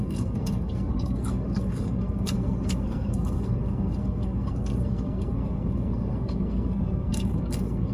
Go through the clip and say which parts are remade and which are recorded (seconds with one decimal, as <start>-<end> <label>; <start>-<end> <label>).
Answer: 0.0-7.9 remade